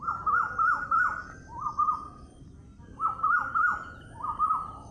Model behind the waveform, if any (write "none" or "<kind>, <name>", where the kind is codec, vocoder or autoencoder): none